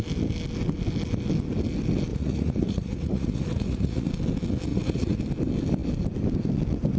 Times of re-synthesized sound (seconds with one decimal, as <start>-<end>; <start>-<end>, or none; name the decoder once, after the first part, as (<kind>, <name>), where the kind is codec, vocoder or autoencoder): 2.1-4.1 (vocoder, Vocos); 4.7-5.2